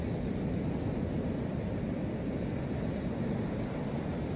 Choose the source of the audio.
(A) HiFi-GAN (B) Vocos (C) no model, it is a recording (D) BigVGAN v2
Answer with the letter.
C